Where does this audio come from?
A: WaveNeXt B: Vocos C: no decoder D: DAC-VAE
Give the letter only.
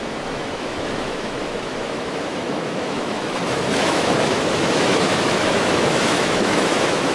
D